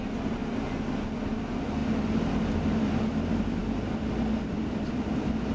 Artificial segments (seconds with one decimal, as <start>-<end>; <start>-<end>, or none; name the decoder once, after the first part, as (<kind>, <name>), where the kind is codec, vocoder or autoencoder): none